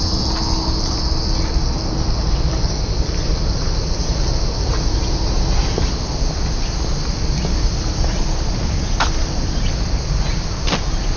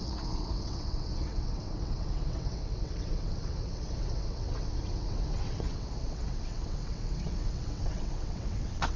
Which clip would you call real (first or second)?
first